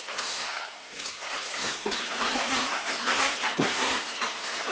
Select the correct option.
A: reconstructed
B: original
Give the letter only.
A